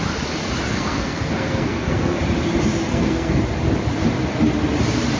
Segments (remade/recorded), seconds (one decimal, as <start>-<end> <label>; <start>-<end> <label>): 0.0-0.7 recorded; 0.7-2.2 remade; 2.2-2.9 recorded; 2.9-3.4 remade; 3.4-5.2 recorded